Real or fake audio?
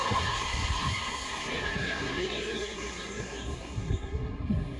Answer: fake